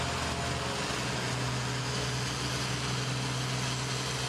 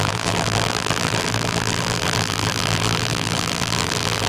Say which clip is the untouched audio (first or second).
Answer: first